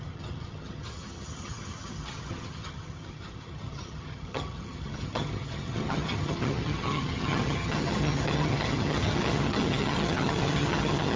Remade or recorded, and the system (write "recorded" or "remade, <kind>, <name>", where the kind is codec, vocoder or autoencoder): remade, vocoder, HiFi-GAN